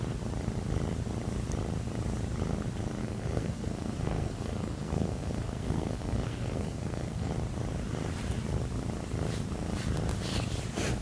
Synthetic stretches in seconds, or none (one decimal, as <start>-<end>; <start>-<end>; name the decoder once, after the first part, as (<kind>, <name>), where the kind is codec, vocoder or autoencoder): 3.0-7.3 (codec, SNAC)

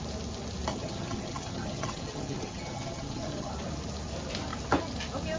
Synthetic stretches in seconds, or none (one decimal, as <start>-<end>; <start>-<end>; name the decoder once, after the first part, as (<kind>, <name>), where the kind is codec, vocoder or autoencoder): 0.7-3.5 (vocoder, HiFi-GAN)

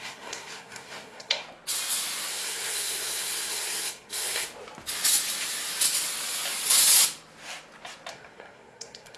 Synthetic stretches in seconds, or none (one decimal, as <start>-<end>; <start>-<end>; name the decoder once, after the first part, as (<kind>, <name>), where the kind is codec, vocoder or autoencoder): 0.0-1.4 (codec, SNAC); 2.3-4.5; 8.1-9.2

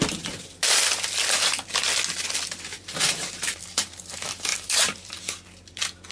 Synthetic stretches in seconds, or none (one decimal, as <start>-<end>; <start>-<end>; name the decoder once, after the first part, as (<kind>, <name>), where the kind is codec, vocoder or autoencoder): 2.7-4.0 (vocoder, BigVGAN v2); 4.5-5.1

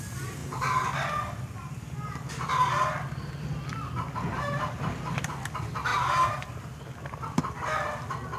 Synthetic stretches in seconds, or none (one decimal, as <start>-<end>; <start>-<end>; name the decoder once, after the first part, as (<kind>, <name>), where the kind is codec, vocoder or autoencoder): 4.3-5.0 (vocoder, BigVGAN v2); 5.9-7.5